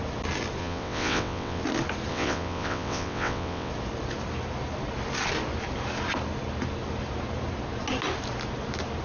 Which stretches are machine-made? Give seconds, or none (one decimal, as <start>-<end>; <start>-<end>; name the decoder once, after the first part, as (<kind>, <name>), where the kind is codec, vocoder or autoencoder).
0.6-1.6 (vocoder, WaveNeXt); 2.1-3.7